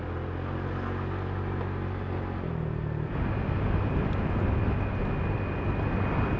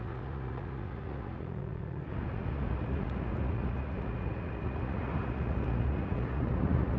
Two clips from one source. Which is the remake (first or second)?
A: second